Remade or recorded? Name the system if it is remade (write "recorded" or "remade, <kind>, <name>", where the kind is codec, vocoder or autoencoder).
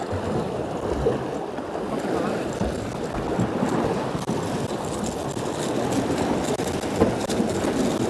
recorded